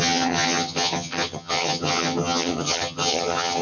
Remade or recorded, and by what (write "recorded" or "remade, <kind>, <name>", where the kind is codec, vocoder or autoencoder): remade, vocoder, HiFi-GAN